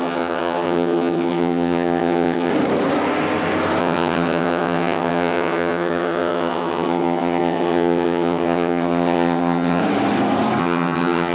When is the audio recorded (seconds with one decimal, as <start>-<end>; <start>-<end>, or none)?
2.5-3.8; 9.8-10.6

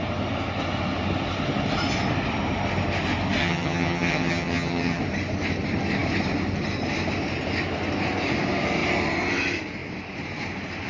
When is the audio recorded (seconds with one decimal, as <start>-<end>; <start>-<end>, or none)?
0.0-3.4; 5.0-10.9

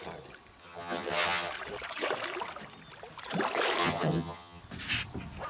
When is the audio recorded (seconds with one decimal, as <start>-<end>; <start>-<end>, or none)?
0.0-0.6; 1.5-3.8; 4.6-5.5